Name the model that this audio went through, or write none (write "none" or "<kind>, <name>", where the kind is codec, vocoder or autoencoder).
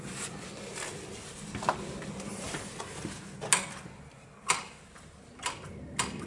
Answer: none